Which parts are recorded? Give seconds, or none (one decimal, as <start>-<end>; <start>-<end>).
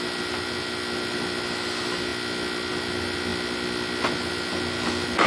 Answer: 0.0-5.3